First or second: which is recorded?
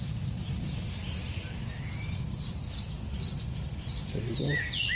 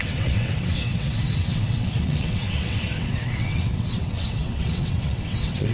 first